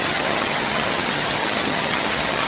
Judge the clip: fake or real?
fake